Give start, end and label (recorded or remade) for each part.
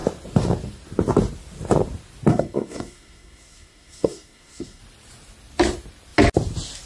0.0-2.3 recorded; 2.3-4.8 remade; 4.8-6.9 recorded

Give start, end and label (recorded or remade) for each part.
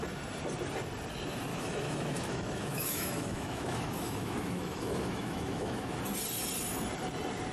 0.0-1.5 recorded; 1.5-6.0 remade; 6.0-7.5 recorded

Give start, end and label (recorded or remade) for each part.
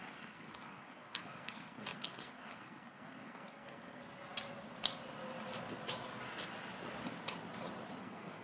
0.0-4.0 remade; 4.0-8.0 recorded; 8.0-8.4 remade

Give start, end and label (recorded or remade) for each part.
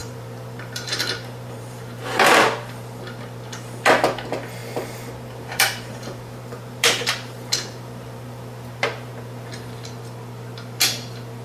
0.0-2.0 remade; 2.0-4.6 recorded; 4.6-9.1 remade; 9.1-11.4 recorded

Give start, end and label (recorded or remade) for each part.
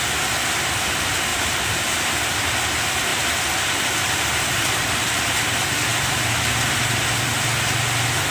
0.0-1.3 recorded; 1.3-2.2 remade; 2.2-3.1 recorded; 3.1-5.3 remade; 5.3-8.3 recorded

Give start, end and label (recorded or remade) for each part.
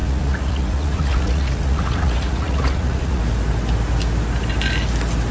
0.0-3.2 remade; 3.2-5.3 recorded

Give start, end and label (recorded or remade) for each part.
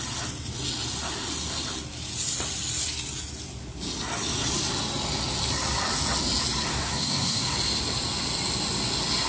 0.0-6.7 recorded; 6.7-7.4 remade; 7.4-9.3 recorded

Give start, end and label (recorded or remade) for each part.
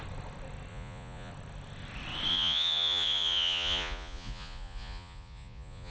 0.0-0.7 recorded; 0.7-1.3 remade; 1.3-2.3 recorded; 2.3-5.9 remade